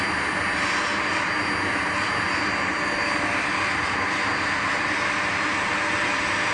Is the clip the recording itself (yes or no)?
yes